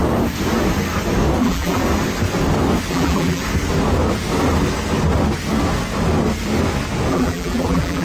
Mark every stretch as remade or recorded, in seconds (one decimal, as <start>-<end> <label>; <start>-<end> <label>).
0.0-1.4 recorded; 1.4-1.8 remade; 1.8-2.9 recorded; 2.9-3.4 remade; 3.4-7.1 recorded; 7.1-8.0 remade